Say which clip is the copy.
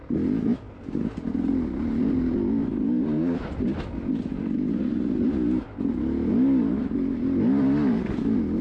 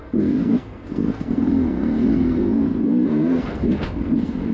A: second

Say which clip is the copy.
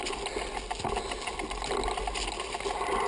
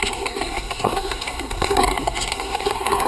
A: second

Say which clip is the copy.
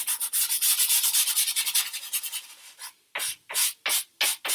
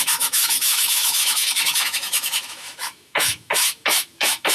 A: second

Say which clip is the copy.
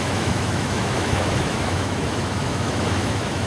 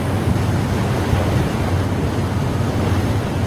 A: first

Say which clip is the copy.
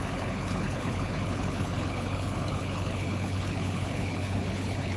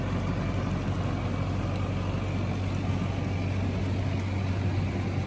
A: first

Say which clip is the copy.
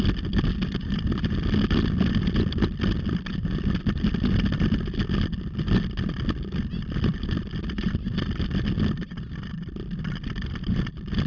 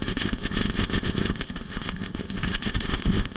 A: second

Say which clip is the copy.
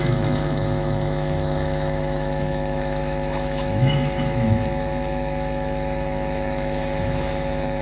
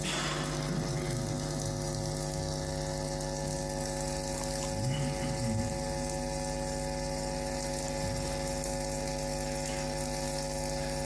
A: first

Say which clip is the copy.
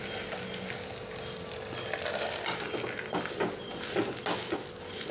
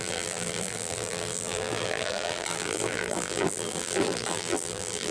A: second